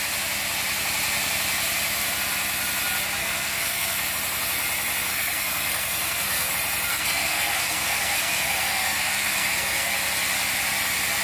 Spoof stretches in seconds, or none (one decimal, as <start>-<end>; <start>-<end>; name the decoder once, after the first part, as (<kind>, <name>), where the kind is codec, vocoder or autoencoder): 3.2-4.1 (codec, SNAC); 5.1-6.5; 6.9-9.9